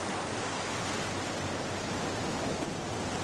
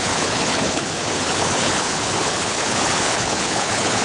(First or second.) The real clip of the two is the first